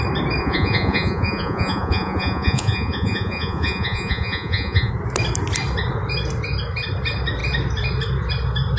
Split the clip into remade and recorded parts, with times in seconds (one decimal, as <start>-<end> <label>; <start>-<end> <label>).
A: 0.0-0.4 recorded; 0.4-4.9 remade; 4.9-8.8 recorded